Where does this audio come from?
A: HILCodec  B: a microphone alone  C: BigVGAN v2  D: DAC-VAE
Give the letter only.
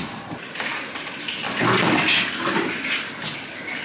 B